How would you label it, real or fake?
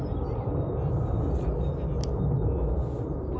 real